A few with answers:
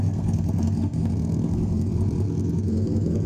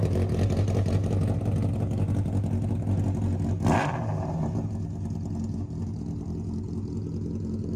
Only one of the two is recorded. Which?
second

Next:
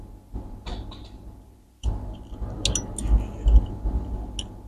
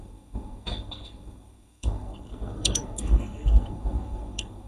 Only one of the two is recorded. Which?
first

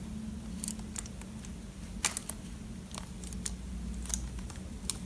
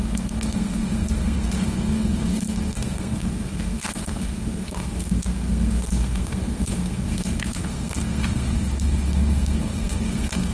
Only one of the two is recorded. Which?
first